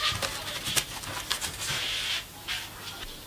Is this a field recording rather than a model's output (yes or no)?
yes